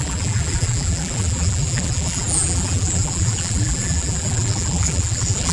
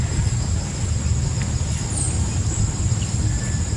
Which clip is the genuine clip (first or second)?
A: second